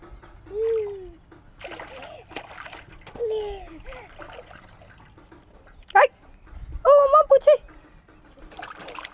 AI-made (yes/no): no